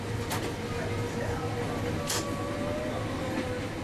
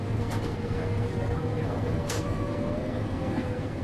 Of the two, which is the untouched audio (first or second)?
first